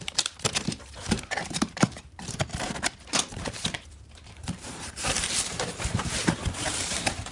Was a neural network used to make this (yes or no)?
yes